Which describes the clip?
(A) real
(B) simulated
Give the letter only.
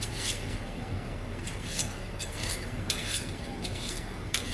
B